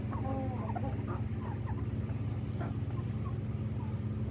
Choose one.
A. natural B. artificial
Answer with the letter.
A